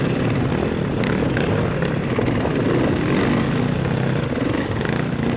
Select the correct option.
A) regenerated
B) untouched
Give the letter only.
B